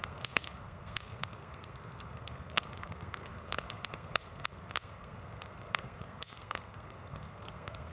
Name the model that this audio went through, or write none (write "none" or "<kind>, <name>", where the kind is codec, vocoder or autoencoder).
codec, SNAC